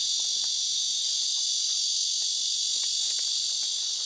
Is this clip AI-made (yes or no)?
no